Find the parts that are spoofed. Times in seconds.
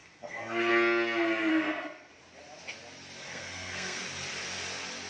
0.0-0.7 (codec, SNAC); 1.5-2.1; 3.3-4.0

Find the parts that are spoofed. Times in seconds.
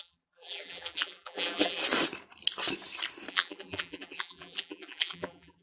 0.0-1.8 (vocoder, BigVGAN v2); 3.3-5.6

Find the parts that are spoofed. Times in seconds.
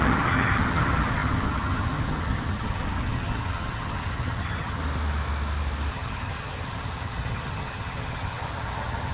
0.0-4.8 (vocoder, HiFi-GAN); 5.9-9.1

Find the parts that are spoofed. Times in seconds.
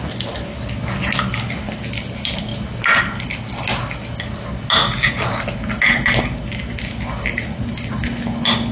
none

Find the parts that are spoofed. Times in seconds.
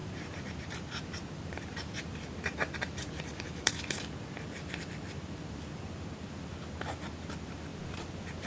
0.0-3.7 (vocoder, BigVGAN v2); 7.7-8.5